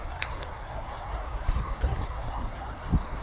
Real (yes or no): no